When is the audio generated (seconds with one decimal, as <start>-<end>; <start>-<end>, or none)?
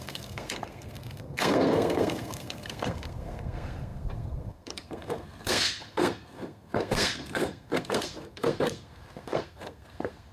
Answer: 0.0-10.3